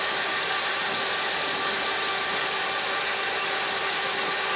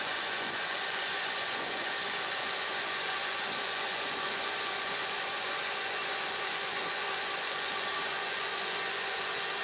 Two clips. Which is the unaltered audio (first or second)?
first